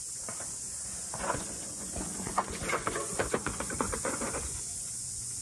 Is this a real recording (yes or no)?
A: no